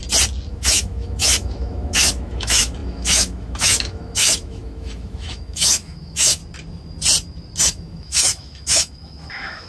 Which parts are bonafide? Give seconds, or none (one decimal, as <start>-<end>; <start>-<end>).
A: 0.0-0.5; 6.4-7.6